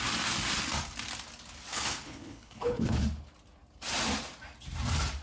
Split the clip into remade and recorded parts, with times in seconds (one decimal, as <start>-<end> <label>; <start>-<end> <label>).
0.0-1.7 recorded; 1.7-3.0 remade; 3.0-5.2 recorded